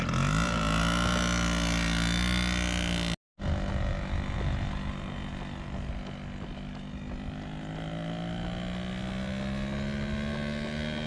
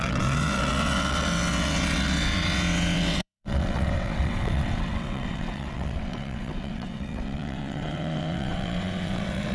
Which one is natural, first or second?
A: first